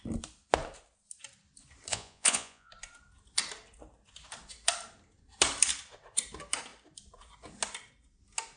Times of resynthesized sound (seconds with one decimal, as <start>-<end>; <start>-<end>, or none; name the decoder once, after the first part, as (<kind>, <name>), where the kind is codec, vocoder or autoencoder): 1.9-2.7 (vocoder, Vocos)

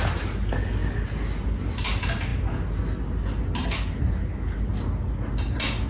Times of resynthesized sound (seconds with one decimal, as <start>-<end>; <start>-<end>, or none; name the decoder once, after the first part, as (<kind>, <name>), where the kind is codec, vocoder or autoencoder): none